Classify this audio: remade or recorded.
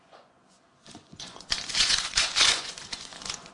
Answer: remade